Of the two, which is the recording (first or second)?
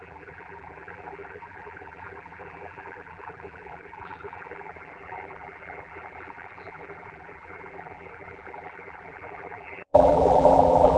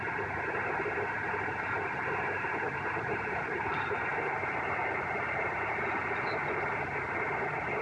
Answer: second